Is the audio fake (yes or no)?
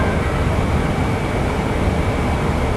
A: no